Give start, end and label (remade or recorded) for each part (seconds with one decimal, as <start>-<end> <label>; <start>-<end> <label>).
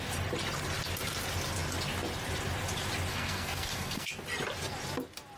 0.0-3.1 recorded; 3.1-4.1 remade; 4.1-5.4 recorded